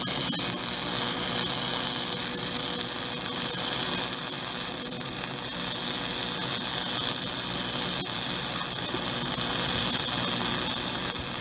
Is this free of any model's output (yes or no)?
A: yes